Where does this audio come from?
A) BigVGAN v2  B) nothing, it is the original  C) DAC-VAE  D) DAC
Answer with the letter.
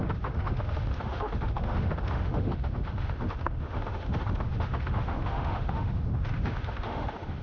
C